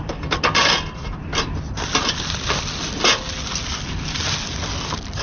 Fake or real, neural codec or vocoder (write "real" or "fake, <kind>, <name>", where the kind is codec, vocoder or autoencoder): real